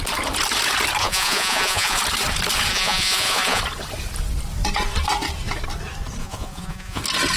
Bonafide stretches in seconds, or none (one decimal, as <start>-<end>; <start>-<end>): 0.0-1.0; 2.0-2.7; 3.6-6.2; 7.0-7.4